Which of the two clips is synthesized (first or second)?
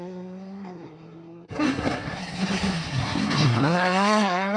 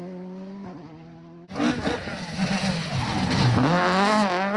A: first